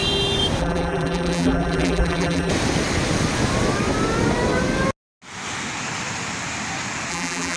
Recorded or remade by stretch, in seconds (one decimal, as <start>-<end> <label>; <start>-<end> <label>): 0.0-0.6 recorded; 0.6-2.5 remade; 2.5-7.1 recorded; 7.1-7.6 remade